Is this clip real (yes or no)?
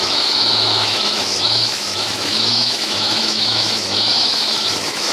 no